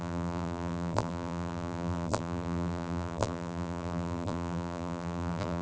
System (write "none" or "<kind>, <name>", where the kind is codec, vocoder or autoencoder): vocoder, BigVGAN v2